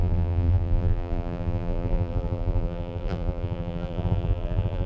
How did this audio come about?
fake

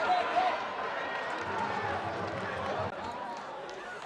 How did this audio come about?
fake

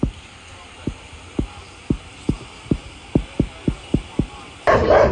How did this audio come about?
fake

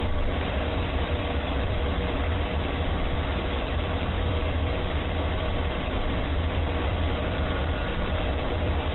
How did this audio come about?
fake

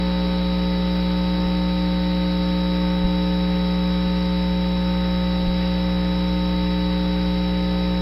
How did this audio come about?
real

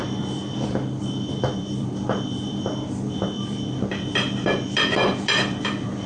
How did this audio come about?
fake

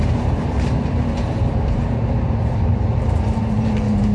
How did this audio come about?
fake